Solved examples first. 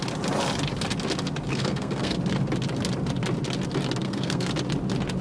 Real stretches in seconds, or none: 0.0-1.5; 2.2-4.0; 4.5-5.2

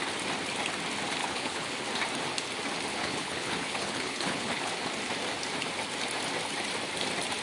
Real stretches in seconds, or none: 0.0-1.2; 1.8-2.9; 4.7-7.4